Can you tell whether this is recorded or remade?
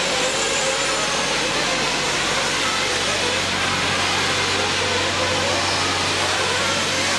recorded